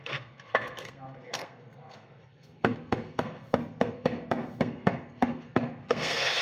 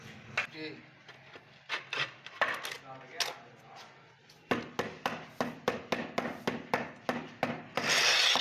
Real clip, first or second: second